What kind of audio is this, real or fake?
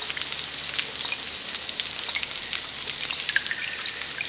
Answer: real